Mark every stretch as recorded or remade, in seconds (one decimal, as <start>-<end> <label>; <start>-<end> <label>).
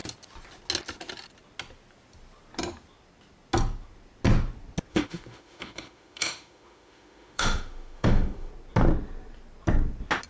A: 0.0-4.9 recorded; 4.9-8.5 remade; 8.5-10.3 recorded